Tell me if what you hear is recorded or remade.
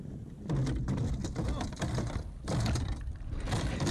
recorded